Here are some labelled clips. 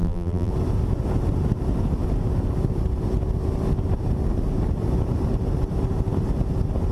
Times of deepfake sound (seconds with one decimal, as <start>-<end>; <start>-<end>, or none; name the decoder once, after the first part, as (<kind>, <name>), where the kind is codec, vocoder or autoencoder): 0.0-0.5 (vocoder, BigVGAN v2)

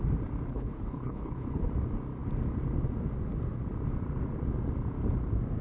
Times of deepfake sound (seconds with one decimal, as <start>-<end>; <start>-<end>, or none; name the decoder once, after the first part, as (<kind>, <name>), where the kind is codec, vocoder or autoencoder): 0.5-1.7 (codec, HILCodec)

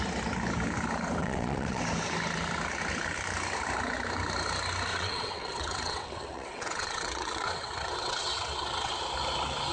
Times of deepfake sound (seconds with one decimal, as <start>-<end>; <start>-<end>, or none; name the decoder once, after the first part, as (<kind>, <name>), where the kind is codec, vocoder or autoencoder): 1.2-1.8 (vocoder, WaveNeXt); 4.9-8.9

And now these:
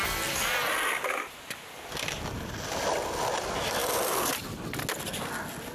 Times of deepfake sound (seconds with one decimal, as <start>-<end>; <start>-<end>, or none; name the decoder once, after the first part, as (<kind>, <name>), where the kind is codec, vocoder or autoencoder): none

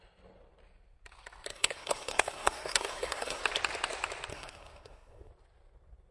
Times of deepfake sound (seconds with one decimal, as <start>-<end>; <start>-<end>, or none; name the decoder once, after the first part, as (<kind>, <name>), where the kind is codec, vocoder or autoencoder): 1.5-3.4 (codec, SNAC); 4.3-5.3

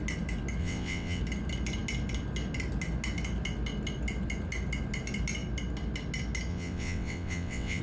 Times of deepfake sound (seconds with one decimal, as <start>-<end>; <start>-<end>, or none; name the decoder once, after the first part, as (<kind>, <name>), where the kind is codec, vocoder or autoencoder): 0.6-1.2 (vocoder, WaveNeXt); 6.5-7.8

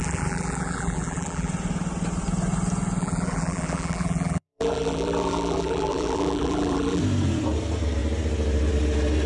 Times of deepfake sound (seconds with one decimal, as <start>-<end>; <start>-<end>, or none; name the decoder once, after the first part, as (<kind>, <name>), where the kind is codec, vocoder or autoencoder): 0.0-1.5 (vocoder, BigVGAN v2); 3.0-7.0